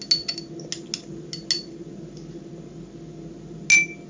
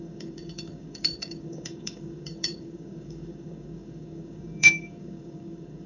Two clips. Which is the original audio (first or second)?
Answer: first